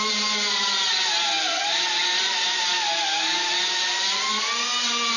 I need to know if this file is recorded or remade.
recorded